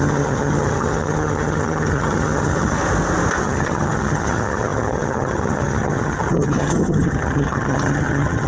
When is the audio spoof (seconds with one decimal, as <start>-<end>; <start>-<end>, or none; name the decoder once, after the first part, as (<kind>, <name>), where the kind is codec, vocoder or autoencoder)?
0.0-2.8 (vocoder, HiFi-GAN); 3.4-8.5